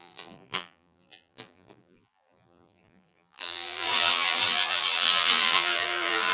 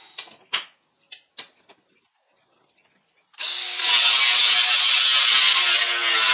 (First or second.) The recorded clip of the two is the second